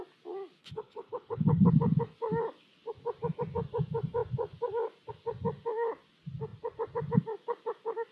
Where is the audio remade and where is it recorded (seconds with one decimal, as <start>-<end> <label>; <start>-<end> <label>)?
0.0-0.6 recorded; 0.6-1.7 remade; 1.7-8.1 recorded